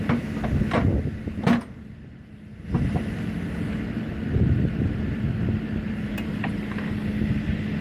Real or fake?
real